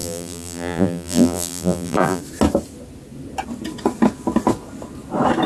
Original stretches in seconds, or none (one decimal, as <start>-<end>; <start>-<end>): 2.2-5.5